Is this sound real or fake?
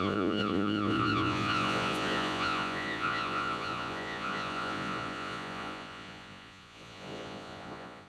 fake